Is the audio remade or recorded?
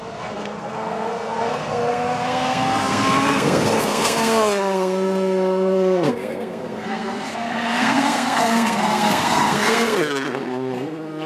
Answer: remade